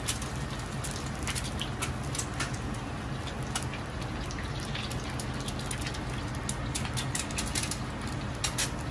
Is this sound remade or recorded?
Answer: recorded